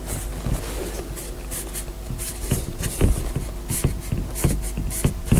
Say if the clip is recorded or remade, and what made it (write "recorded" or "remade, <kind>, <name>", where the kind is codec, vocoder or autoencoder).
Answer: recorded